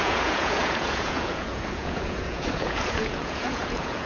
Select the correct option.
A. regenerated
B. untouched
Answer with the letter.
A